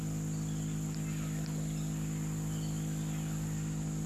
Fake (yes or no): no